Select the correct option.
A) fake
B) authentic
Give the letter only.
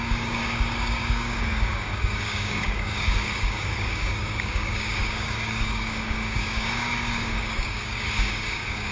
A